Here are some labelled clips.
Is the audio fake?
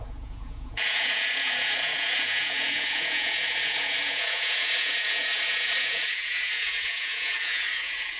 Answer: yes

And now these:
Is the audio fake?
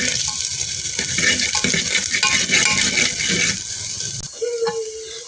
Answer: no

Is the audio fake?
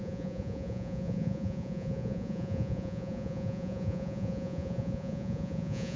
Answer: yes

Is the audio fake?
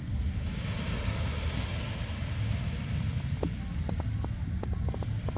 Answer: no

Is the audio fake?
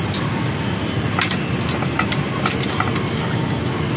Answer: no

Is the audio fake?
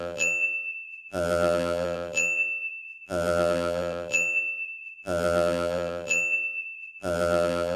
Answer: yes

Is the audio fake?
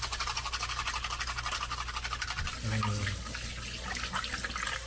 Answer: no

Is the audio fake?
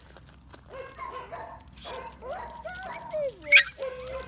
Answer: no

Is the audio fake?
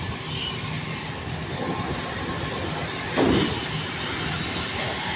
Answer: no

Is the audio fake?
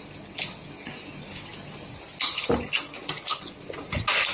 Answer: no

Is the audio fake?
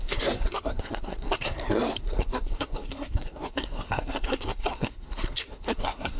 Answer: yes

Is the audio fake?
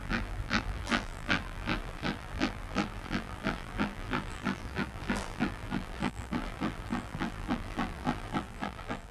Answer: yes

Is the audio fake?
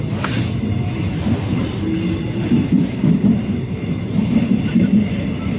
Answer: no